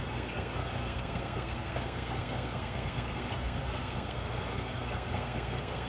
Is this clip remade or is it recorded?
remade